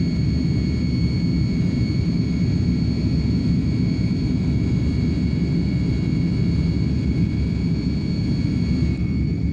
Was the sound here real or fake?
real